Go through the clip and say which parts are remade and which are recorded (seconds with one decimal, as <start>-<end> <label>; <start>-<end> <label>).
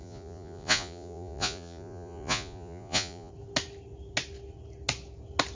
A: 0.0-3.3 remade; 3.3-5.5 recorded